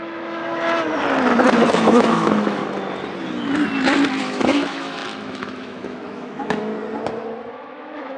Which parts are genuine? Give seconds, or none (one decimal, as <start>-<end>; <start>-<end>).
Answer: 0.4-1.7; 2.6-4.2; 6.7-7.5